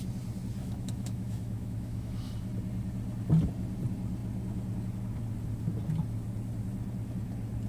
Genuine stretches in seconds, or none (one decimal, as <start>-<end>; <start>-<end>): 0.0-0.6; 2.3-7.7

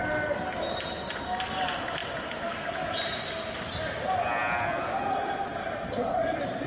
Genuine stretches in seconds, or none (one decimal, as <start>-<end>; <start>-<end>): 0.0-2.0; 2.6-5.5

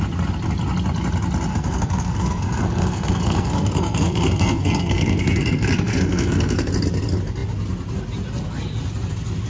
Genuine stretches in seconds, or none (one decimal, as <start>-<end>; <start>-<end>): 0.0-1.5; 6.7-9.5

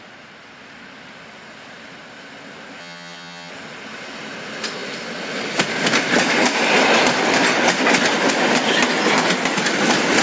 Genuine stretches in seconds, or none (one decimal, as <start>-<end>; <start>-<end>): 0.0-2.8; 3.5-10.2

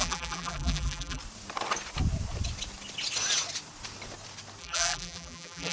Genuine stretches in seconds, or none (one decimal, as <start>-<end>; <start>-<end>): 1.2-4.6

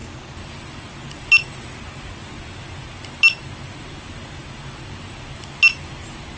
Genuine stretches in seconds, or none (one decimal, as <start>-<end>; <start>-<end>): 0.0-6.4

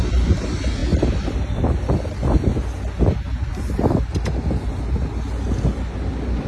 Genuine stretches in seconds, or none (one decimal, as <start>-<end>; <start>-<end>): 0.0-6.5

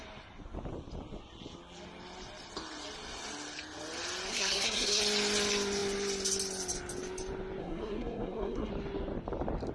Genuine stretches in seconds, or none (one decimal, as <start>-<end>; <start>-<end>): 0.0-4.3; 5.0-7.6; 8.7-9.7